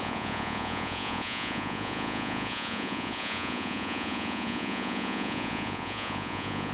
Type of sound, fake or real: fake